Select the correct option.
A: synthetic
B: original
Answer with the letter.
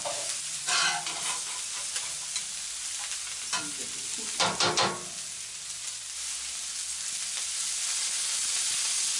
B